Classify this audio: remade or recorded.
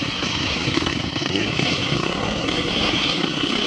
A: remade